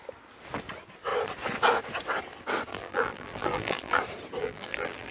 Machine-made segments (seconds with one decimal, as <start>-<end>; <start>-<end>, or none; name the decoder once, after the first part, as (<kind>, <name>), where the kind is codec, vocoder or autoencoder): 2.7-4.0 (vocoder, BigVGAN v2); 4.4-5.1

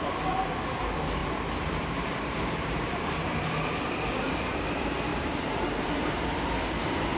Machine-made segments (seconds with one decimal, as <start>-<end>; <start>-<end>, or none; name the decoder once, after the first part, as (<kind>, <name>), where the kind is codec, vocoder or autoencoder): 1.2-3.8 (vocoder, BigVGAN v2); 5.1-6.2

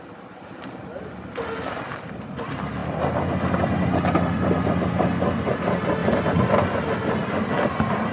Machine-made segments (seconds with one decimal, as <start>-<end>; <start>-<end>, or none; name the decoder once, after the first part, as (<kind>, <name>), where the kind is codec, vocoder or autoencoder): 6.0-6.7 (vocoder, BigVGAN v2)

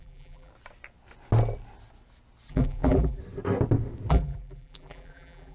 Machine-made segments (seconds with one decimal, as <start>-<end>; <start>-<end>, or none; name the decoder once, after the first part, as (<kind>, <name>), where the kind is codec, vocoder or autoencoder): 0.0-0.5 (vocoder, BigVGAN v2); 2.5-3.2; 4.1-5.5

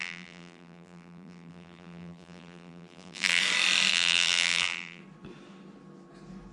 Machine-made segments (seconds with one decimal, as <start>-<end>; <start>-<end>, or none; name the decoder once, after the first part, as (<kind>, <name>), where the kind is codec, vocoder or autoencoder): 0.0-3.4 (vocoder, BigVGAN v2); 3.9-5.0

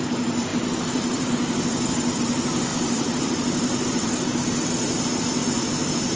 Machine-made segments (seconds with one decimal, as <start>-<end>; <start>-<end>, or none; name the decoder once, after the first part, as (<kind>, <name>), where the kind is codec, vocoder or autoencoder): 0.5-1.3 (vocoder, BigVGAN v2); 2.7-4.4